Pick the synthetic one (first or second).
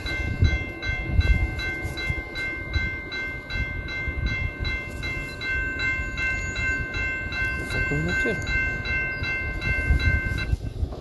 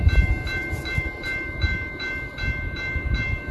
second